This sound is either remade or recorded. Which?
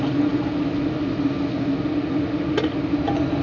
recorded